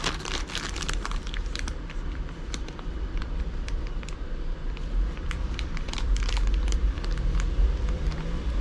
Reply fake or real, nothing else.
fake